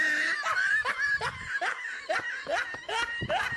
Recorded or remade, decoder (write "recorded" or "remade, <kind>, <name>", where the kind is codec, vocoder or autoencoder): recorded